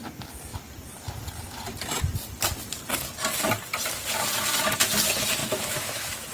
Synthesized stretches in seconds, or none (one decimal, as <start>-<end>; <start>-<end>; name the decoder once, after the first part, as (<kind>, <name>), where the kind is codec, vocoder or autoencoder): 5.4-6.3 (autoencoder, DAC-VAE)